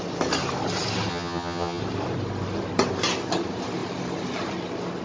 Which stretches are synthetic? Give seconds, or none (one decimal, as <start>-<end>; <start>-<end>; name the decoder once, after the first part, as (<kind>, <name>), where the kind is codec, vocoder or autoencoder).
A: 1.1-1.8 (vocoder, HiFi-GAN)